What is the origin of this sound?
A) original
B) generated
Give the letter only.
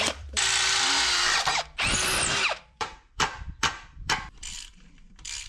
B